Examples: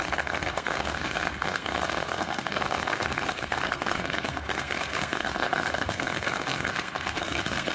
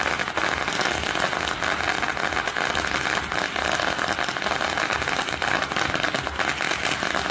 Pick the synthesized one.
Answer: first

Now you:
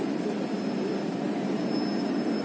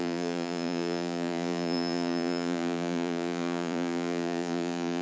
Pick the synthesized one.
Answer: second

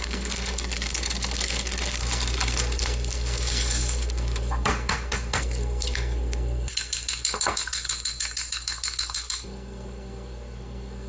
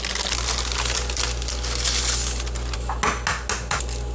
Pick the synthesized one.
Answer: first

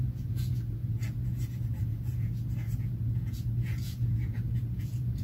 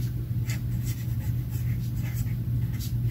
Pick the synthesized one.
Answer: first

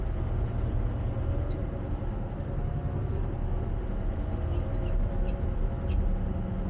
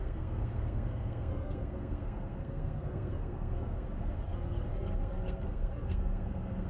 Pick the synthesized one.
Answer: second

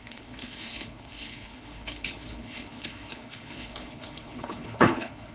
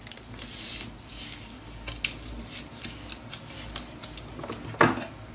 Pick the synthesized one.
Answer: first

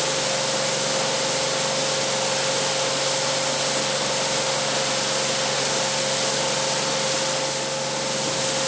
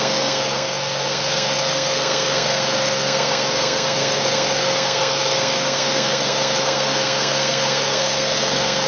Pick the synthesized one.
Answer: second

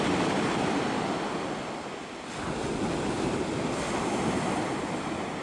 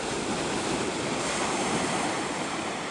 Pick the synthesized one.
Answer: second